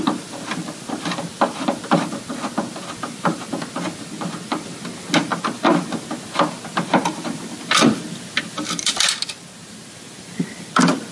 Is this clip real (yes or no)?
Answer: yes